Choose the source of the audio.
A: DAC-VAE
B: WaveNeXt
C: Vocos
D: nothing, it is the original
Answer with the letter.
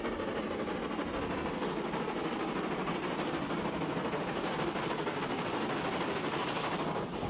D